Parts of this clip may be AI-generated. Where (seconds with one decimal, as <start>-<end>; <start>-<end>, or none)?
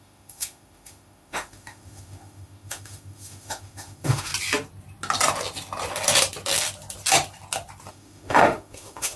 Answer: 0.0-4.3; 7.9-9.2